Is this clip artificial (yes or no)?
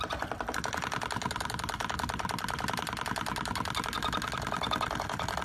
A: no